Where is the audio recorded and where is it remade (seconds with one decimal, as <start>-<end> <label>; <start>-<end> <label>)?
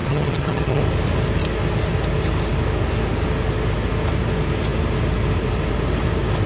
0.0-0.8 remade; 0.8-6.5 recorded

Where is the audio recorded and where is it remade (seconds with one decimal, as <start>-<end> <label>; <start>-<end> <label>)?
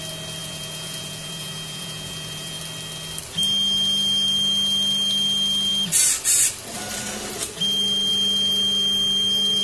0.0-0.4 recorded; 0.4-2.6 remade; 2.6-9.6 recorded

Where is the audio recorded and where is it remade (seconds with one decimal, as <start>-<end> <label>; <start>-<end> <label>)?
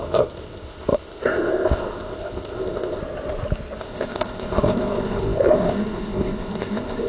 0.0-3.0 remade; 3.0-3.8 recorded; 3.8-7.1 remade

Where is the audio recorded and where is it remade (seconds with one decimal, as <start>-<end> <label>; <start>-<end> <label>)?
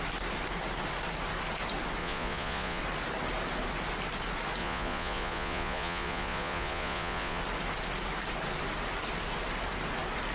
0.0-2.0 recorded; 2.0-2.8 remade; 2.8-4.6 recorded; 4.6-7.4 remade; 7.4-10.3 recorded